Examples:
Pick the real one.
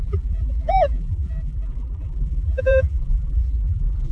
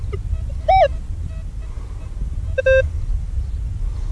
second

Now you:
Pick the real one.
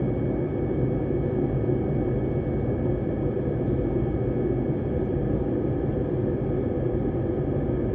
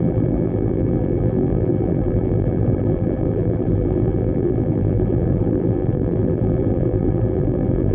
first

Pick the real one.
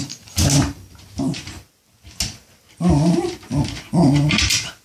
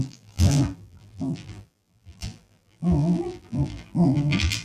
first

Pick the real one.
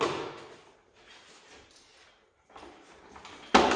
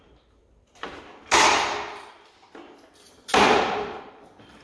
first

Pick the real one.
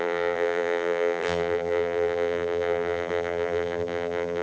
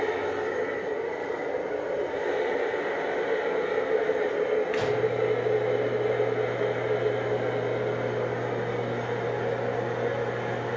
second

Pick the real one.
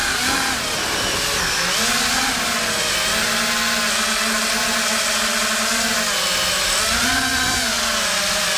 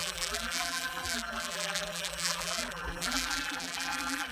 first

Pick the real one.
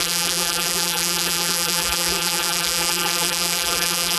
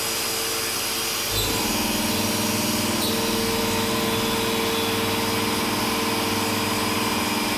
second